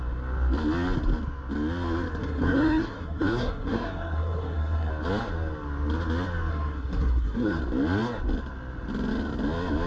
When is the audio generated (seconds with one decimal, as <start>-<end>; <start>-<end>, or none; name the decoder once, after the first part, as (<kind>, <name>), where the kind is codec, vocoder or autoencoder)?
2.2-4.9 (codec, SNAC); 6.5-7.6